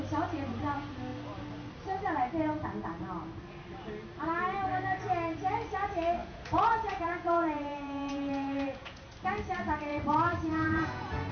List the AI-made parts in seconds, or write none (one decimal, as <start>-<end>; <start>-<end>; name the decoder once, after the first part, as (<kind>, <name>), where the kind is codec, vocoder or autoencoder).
6.2-9.1 (vocoder, Vocos); 9.9-11.3